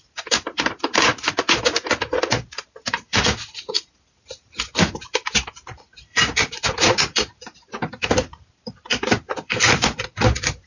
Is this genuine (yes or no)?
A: no